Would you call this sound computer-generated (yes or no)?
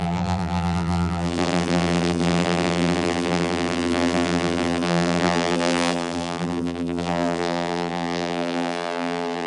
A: yes